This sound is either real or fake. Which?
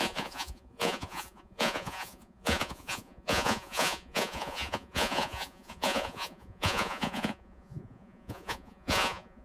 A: fake